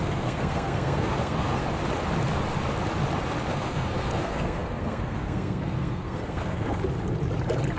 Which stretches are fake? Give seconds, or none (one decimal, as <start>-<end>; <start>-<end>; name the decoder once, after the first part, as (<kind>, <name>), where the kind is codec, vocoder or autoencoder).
0.0-1.6 (codec, SNAC); 3.5-6.8